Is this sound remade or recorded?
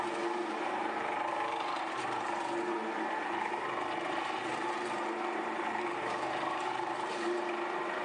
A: remade